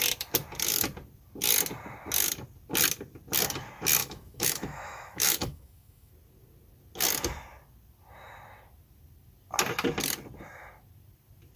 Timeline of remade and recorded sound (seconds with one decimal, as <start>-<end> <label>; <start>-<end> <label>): 0.0-4.0 recorded; 4.0-6.1 remade; 6.1-11.6 recorded